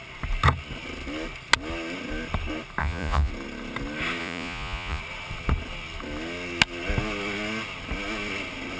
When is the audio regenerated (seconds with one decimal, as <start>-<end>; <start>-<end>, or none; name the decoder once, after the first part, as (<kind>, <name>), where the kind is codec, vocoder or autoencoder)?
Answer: 2.8-3.3 (vocoder, Vocos); 4.2-5.0